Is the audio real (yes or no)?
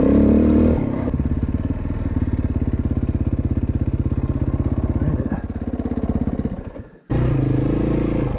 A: yes